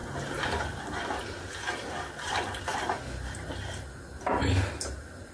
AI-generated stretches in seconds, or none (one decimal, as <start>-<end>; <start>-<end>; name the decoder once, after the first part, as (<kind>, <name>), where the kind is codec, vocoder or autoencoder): 4.4-5.3 (vocoder, BigVGAN v2)